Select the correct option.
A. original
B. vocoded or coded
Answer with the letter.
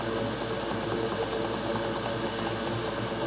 A